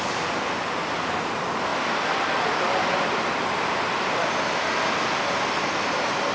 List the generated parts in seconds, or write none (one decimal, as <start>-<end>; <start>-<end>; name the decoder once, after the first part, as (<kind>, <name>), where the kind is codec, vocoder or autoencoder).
none